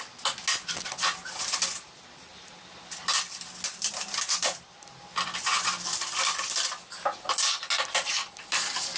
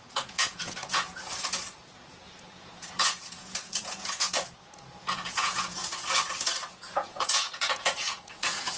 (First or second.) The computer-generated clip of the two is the second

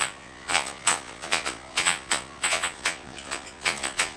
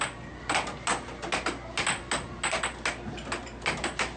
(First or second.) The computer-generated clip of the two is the first